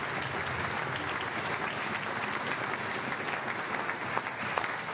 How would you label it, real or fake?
real